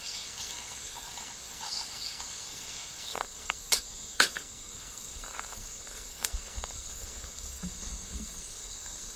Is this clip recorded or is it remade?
remade